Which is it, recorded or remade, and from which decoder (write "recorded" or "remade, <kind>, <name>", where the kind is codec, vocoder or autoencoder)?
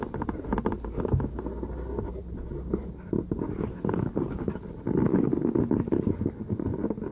recorded